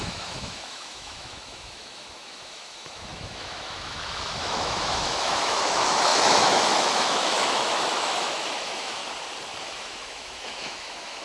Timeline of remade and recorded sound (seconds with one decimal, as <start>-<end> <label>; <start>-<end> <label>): 0.0-9.0 remade; 9.0-9.6 recorded; 9.6-11.2 remade